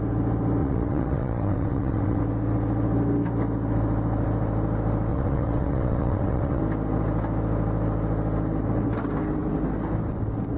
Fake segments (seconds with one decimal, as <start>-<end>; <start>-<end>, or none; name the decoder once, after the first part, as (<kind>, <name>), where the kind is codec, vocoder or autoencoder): 0.6-2.2 (vocoder, WaveNeXt); 5.1-6.6